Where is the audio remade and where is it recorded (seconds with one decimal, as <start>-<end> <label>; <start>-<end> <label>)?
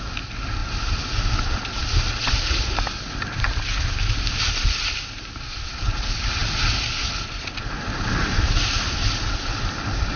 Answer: 0.0-10.2 recorded